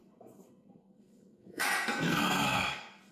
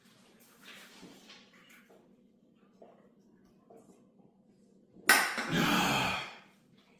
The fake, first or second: first